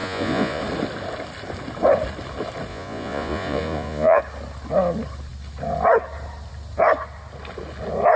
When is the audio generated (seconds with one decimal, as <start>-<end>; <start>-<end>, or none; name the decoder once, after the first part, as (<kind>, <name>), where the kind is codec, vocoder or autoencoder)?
0.0-0.6 (vocoder, Vocos); 2.7-4.2